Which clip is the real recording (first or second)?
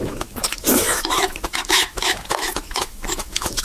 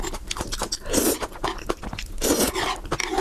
second